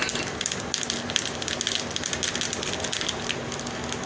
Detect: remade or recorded recorded